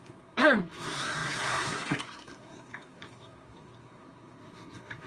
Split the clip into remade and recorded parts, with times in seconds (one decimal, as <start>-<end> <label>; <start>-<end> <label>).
0.0-5.1 remade